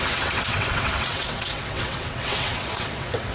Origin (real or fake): fake